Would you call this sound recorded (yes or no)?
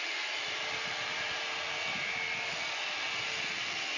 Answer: yes